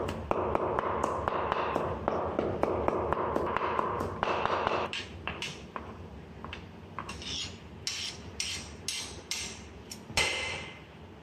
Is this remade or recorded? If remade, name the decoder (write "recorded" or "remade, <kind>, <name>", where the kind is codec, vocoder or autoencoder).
recorded